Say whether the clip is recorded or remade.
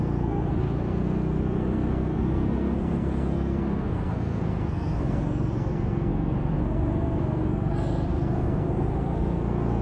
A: remade